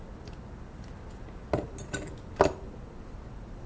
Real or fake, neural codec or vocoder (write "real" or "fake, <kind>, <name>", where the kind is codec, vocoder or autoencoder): real